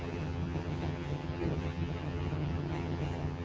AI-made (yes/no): yes